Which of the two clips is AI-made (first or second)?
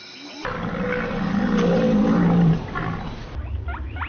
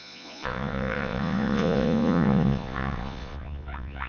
second